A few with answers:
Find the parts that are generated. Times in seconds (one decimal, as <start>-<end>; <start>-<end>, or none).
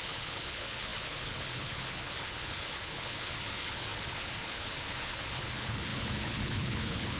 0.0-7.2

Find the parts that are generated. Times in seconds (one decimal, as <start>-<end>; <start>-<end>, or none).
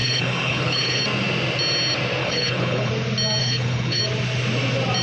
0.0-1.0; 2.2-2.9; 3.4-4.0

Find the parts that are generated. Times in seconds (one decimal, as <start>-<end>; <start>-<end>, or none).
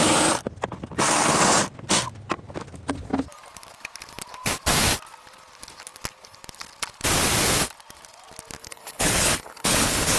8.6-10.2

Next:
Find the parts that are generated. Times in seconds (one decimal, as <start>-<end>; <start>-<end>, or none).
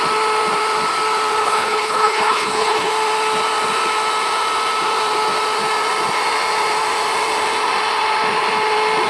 1.4-2.9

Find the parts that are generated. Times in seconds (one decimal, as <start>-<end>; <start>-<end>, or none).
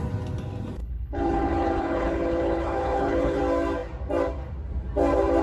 0.8-3.4